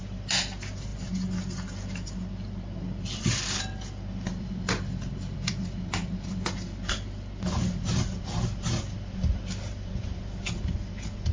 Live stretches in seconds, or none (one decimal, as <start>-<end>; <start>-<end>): 0.0-4.3; 6.5-11.3